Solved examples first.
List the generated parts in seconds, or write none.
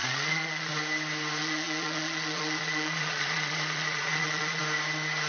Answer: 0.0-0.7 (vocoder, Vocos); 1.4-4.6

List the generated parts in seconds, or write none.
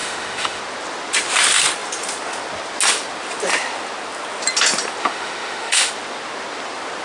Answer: 0.0-0.6 (autoencoder, DAC-VAE); 5.0-5.9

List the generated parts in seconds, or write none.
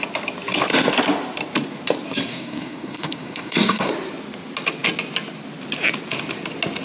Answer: 2.3-3.9 (codec, SNAC)